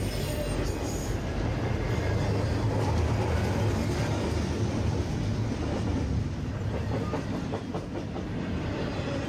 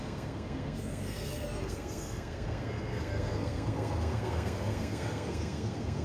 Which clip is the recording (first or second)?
first